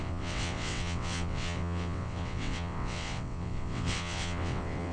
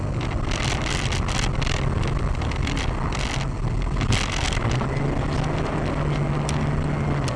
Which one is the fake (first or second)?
first